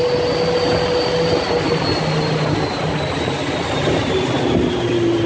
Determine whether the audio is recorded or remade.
recorded